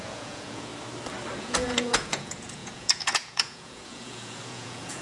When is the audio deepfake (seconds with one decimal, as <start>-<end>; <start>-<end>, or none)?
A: 0.0-0.7; 1.4-5.0